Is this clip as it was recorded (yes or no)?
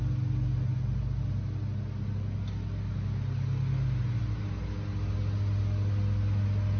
yes